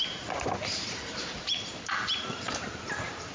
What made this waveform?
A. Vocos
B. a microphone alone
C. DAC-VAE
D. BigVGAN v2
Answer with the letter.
D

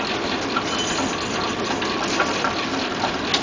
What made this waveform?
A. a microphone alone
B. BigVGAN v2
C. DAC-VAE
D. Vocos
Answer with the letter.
A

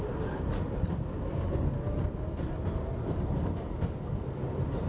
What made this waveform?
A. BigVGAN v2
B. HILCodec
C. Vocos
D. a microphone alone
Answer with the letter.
A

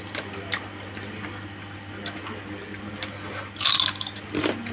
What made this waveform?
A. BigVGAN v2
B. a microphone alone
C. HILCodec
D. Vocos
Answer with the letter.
B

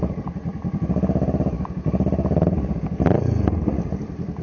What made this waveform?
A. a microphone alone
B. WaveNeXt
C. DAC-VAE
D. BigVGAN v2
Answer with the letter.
A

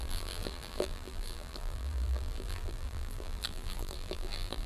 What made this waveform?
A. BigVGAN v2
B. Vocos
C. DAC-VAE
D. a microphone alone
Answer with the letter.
A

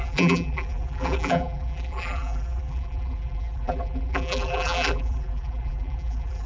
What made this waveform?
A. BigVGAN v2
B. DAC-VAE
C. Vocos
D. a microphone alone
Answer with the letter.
A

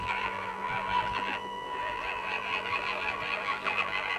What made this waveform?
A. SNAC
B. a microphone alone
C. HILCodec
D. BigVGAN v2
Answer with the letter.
D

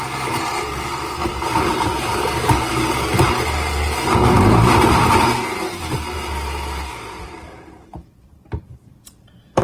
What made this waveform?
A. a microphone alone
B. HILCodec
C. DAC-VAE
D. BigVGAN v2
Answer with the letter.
D